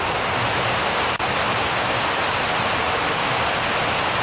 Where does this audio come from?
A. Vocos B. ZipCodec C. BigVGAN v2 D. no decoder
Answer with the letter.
C